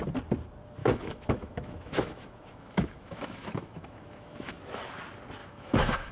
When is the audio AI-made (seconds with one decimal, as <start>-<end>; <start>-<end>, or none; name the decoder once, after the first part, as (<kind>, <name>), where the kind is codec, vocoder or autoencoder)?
0.8-4.5 (autoencoder, DAC-VAE); 5.4-6.1